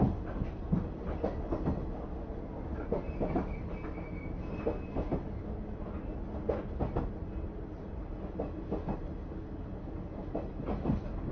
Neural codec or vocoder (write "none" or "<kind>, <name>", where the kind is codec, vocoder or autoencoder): none